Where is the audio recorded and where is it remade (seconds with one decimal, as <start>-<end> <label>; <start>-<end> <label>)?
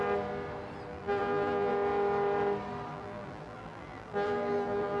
0.0-0.9 recorded; 0.9-1.7 remade; 1.7-2.9 recorded; 2.9-5.0 remade